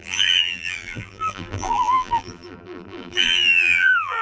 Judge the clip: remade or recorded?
remade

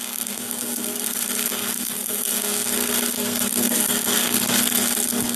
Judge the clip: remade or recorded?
remade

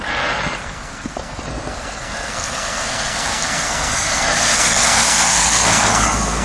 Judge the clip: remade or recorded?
remade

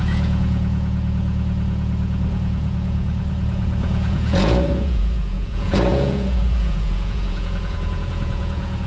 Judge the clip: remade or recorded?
remade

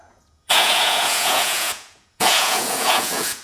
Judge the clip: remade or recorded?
remade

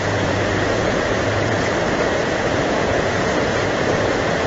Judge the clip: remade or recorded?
remade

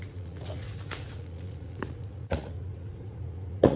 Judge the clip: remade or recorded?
remade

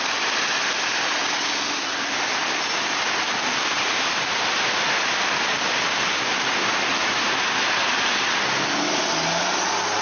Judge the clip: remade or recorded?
recorded